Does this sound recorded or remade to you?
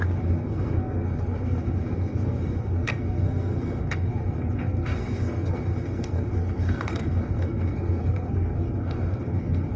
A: remade